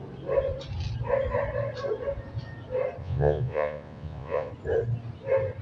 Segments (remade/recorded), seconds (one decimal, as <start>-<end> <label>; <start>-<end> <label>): 0.0-3.0 recorded; 3.0-4.5 remade; 4.5-5.6 recorded